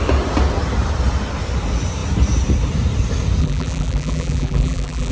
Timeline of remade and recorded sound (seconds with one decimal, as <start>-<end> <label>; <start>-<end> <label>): 0.0-3.4 recorded; 3.4-5.1 remade